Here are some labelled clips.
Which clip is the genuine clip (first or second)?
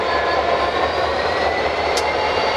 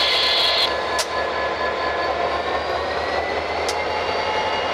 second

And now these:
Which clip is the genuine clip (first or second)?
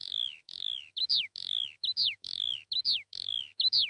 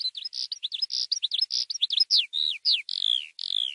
second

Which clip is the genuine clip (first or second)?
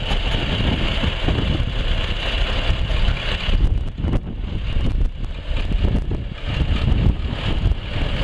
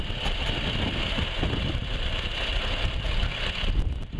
first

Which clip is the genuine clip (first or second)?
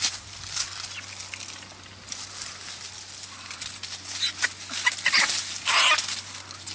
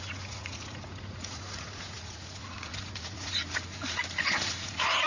first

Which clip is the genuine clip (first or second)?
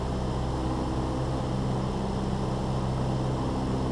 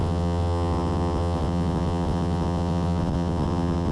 first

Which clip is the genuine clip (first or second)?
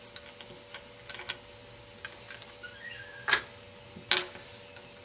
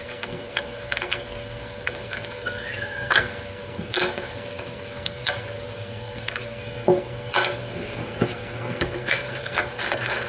first